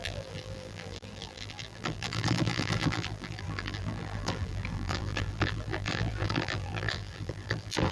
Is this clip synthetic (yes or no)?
yes